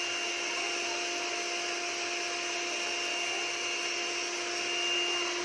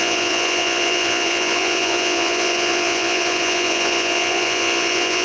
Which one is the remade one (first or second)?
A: second